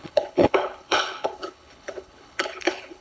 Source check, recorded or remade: remade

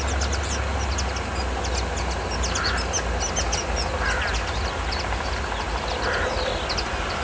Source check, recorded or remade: recorded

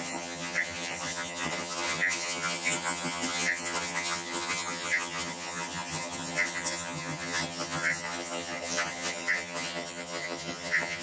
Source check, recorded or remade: remade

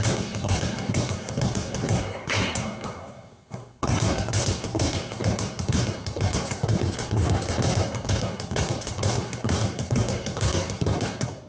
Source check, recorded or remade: remade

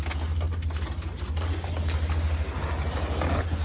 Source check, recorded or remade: recorded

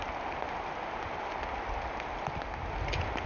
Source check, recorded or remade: recorded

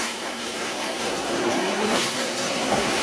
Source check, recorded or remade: remade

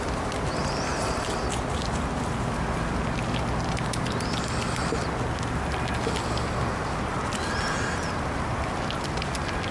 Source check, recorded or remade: recorded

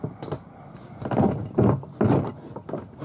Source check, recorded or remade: recorded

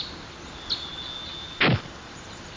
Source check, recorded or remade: recorded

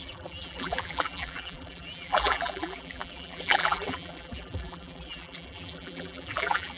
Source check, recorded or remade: remade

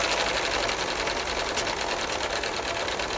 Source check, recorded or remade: recorded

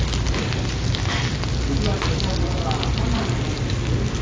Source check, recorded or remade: recorded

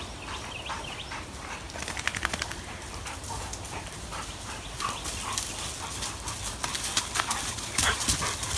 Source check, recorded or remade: recorded